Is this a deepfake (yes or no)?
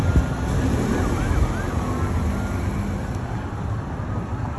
no